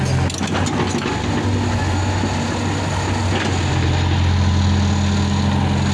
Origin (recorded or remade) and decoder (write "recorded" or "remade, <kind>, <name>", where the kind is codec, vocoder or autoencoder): recorded